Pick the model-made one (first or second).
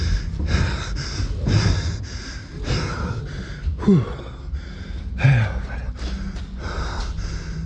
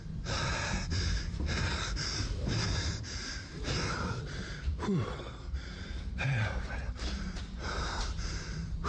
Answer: second